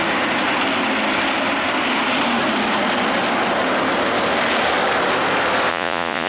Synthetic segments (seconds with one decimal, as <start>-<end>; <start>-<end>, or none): 5.7-6.3